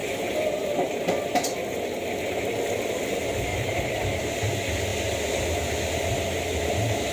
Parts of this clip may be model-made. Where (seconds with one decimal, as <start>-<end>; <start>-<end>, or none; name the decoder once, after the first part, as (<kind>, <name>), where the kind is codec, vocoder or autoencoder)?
0.0-1.7 (vocoder, BigVGAN v2); 3.5-4.2; 4.9-5.6